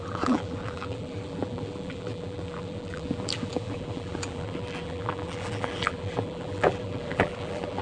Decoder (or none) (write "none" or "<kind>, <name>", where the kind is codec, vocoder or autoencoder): vocoder, BigVGAN v2